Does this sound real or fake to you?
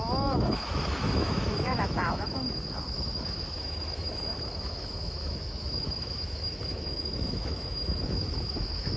fake